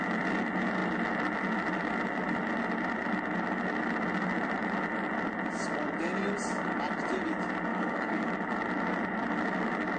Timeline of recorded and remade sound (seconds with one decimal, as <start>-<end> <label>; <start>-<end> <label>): 0.0-7.7 recorded; 7.7-8.3 remade; 8.3-10.0 recorded